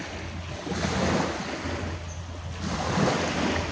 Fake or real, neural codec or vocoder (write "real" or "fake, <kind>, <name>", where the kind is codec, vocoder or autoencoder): real